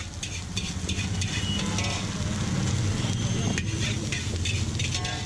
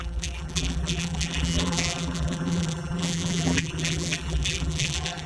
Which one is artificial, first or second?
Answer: second